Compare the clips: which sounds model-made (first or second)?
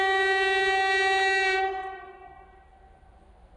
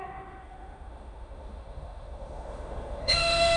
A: second